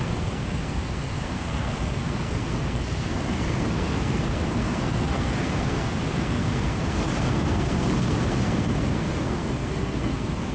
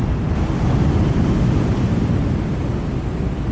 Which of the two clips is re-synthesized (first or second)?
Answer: first